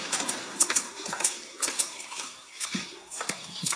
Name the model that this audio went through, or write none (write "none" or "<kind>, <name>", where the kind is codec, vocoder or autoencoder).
codec, SNAC